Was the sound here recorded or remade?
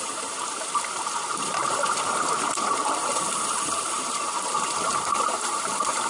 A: remade